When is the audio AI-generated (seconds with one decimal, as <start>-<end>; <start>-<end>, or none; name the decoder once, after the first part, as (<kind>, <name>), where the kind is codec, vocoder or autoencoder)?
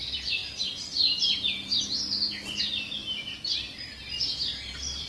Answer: 3.0-5.1 (vocoder, BigVGAN v2)